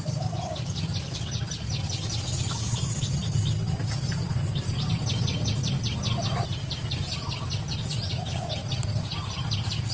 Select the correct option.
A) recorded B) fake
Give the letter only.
A